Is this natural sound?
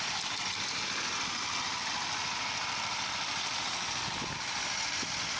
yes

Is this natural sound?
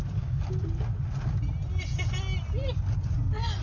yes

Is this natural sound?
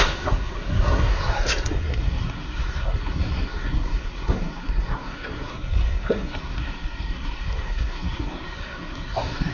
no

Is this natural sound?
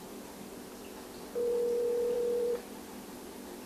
no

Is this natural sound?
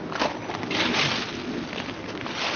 yes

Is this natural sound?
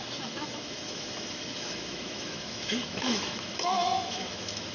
no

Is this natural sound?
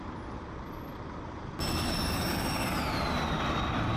yes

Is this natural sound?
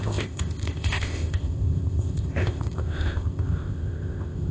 no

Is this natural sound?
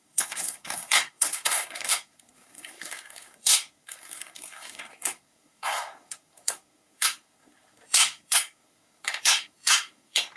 no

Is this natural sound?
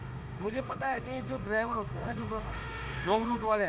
no